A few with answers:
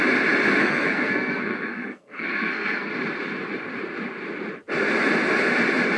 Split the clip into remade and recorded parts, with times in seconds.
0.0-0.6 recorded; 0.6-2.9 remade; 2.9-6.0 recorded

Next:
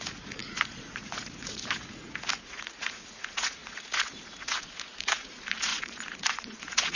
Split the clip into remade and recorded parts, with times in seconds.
0.0-7.0 remade

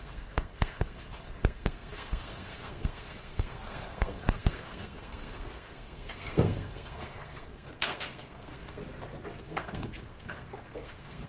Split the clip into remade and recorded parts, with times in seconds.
0.0-8.8 remade; 8.8-9.4 recorded; 9.4-11.3 remade

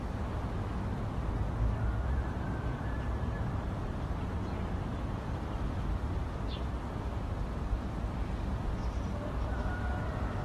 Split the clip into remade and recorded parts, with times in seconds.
0.0-2.2 recorded; 2.2-5.8 remade; 5.8-7.6 recorded; 7.6-8.8 remade; 8.8-10.4 recorded

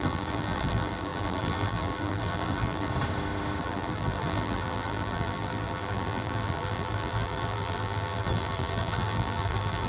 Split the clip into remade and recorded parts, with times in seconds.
0.0-2.9 remade; 2.9-3.6 recorded; 3.6-9.9 remade